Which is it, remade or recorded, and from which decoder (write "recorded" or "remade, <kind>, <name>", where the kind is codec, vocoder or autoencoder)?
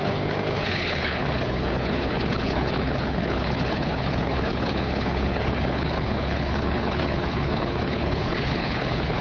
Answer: remade, codec, HILCodec